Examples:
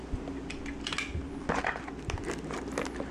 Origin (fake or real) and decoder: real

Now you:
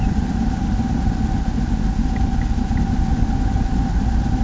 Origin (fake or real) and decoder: real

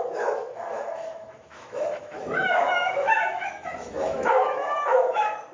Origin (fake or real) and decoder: fake, autoencoder, DAC-VAE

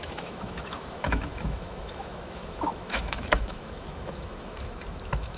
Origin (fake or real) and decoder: fake, autoencoder, DAC-VAE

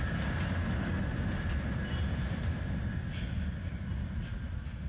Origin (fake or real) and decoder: real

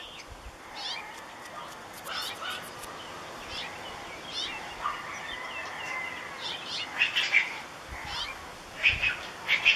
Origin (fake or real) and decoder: real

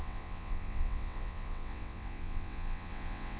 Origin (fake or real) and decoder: fake, vocoder, WaveNeXt